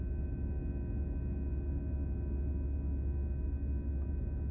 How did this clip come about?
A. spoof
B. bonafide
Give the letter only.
B